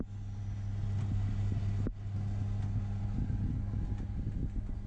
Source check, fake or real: real